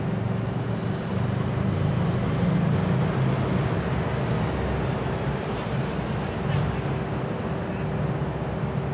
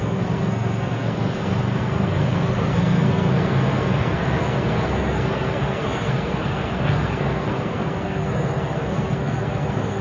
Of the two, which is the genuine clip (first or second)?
first